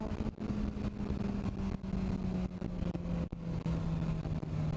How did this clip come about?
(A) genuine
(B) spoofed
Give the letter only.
A